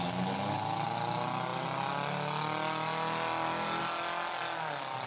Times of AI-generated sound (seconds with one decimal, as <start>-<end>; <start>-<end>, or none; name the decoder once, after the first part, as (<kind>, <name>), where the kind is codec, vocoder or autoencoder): none